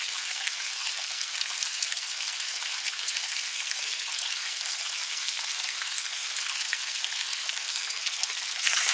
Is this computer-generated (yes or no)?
yes